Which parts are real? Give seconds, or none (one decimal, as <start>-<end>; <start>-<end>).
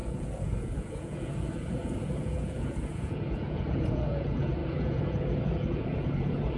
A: none